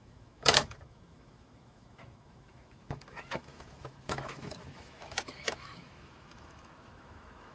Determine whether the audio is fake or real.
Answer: fake